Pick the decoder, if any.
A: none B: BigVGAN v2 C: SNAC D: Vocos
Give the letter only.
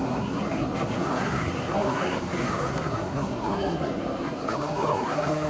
C